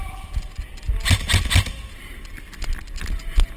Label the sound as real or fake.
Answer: real